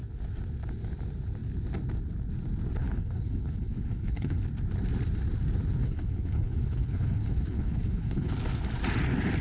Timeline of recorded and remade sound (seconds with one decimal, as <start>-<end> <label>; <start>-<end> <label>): 0.0-2.8 recorded; 2.8-4.4 remade; 4.4-5.8 recorded; 5.8-8.3 remade; 8.3-9.4 recorded